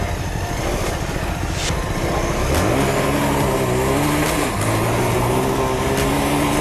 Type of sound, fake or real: real